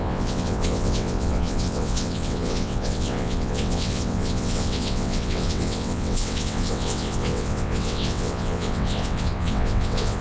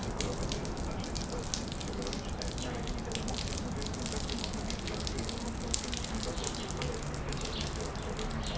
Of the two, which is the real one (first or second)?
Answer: second